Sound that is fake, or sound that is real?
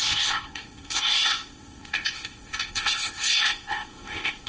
fake